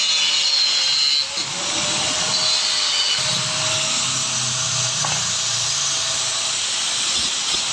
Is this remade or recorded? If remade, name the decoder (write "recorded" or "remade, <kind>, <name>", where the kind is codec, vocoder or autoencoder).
recorded